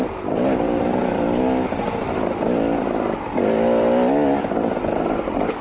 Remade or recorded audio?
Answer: recorded